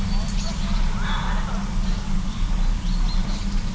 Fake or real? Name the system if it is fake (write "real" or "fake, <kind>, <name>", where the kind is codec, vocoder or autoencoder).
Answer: real